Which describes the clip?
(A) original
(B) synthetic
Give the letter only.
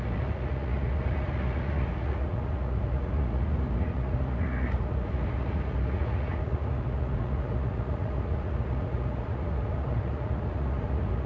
B